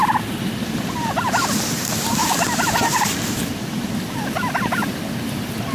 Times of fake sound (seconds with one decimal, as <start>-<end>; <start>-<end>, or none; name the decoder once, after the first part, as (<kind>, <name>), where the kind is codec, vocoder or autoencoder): 0.0-3.4 (vocoder, BigVGAN v2)